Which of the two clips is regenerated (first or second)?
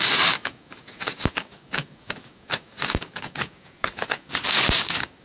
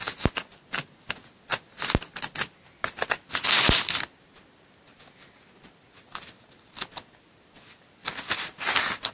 first